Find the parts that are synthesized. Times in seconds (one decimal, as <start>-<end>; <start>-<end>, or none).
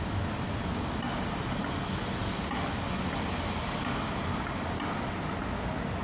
none